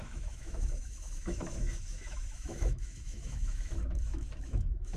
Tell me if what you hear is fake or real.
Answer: fake